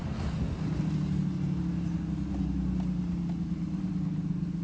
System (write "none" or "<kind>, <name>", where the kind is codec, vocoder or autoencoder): none